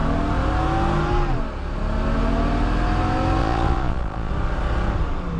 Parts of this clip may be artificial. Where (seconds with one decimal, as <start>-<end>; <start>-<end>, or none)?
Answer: 3.4-4.3